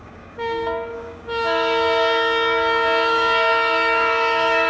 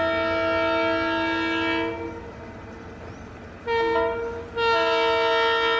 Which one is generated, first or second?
first